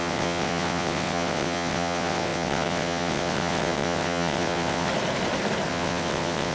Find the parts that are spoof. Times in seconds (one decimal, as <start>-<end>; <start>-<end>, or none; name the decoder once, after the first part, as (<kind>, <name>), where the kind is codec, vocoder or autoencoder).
0.0-4.9 (vocoder, WaveNeXt); 5.7-6.5